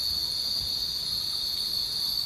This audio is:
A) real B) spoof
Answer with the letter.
A